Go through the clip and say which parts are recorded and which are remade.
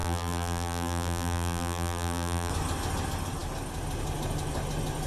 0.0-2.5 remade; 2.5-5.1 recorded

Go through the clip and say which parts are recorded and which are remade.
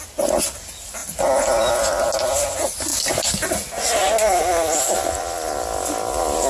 0.0-6.5 recorded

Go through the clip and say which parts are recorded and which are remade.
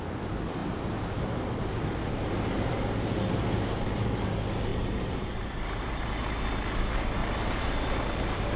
0.0-4.7 recorded; 4.7-6.0 remade; 6.0-7.2 recorded; 7.2-8.6 remade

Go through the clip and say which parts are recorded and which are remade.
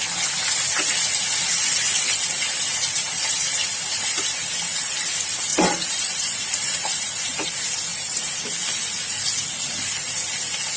0.0-5.5 recorded; 5.5-7.5 remade; 7.5-7.9 recorded; 7.9-8.4 remade; 8.4-10.8 recorded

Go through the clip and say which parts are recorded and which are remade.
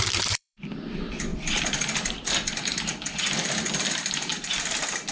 0.0-1.3 remade; 1.3-2.3 recorded; 2.3-4.3 remade; 4.3-5.1 recorded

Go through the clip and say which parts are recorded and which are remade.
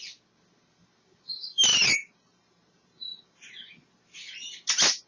0.0-1.7 recorded; 1.7-2.6 remade; 2.6-5.1 recorded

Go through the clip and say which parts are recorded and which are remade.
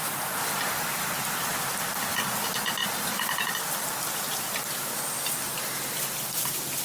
0.0-2.8 recorded; 2.8-3.5 remade; 3.5-6.8 recorded